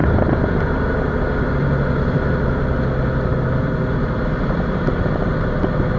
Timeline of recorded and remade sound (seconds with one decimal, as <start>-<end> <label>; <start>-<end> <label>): 0.0-0.6 remade; 0.6-3.3 recorded; 3.3-5.6 remade; 5.6-6.0 recorded